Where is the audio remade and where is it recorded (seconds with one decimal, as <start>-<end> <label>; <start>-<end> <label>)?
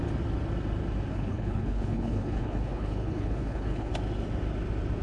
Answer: 0.0-1.1 recorded; 1.1-3.9 remade; 3.9-5.0 recorded